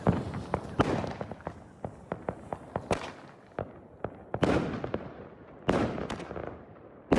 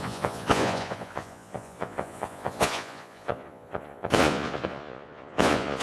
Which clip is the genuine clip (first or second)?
first